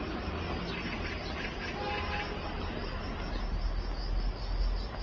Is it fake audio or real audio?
real